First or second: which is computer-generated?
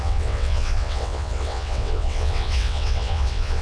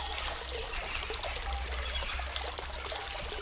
first